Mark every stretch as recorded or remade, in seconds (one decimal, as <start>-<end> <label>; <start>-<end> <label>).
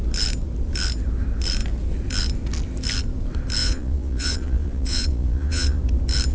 0.0-3.6 recorded; 3.6-5.8 remade; 5.8-6.3 recorded